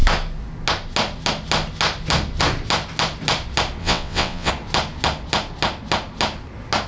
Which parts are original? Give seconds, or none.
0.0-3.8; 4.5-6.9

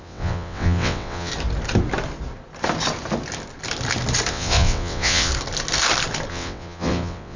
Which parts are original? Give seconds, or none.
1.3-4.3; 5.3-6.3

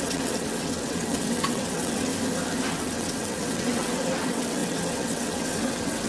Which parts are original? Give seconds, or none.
2.1-2.7